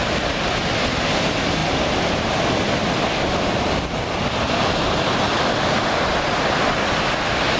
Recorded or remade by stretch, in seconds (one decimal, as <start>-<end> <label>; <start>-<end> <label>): 0.0-1.6 recorded; 1.6-5.6 remade; 5.6-7.6 recorded